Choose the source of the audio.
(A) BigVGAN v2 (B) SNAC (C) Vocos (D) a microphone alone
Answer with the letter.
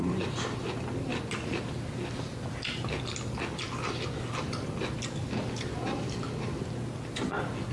D